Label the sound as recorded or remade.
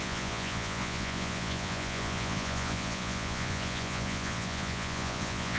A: remade